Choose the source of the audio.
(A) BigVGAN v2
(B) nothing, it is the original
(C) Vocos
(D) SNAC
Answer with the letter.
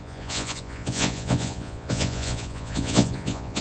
C